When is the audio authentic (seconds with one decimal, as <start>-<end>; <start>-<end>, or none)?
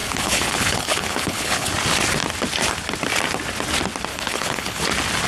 1.7-4.1; 4.8-5.3